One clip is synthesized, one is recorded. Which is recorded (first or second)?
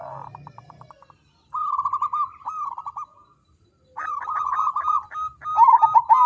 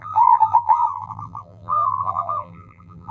first